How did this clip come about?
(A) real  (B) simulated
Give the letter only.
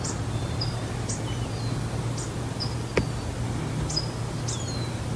A